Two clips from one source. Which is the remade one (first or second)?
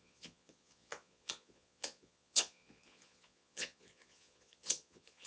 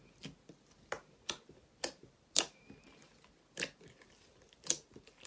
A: first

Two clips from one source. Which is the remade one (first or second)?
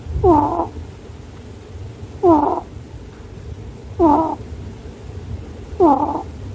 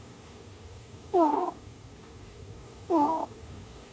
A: second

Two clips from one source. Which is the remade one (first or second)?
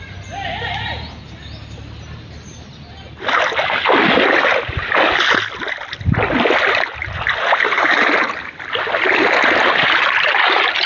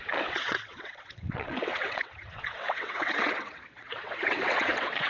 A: second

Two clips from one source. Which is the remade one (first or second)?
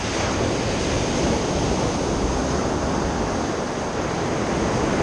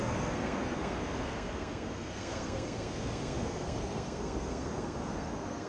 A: second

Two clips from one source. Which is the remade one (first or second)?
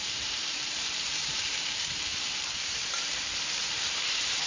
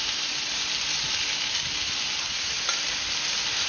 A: first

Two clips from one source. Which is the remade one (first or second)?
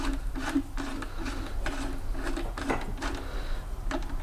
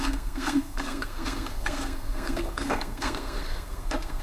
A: second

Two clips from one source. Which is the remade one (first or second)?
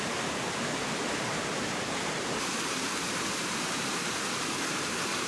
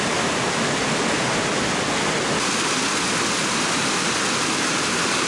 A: first